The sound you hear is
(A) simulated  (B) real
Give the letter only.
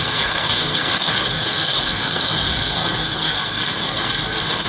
A